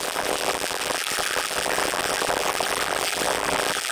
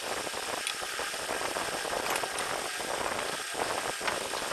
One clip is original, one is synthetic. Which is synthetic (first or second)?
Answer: first